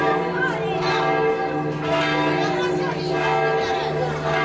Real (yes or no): yes